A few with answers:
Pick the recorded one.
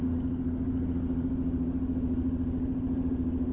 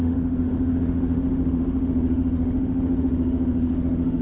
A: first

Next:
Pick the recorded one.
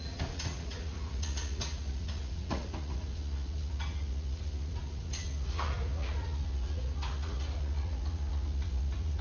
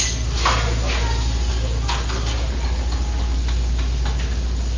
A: second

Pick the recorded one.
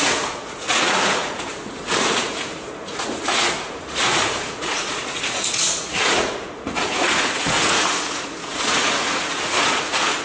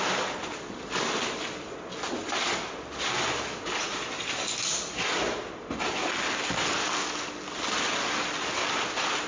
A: second